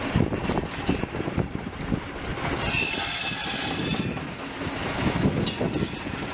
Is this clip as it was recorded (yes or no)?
yes